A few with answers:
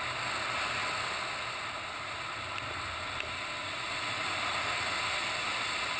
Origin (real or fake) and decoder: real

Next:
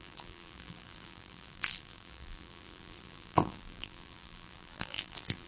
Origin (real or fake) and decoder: fake, vocoder, BigVGAN v2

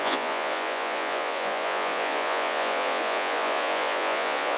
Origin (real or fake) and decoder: fake, vocoder, Vocos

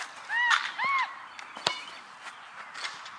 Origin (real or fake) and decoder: real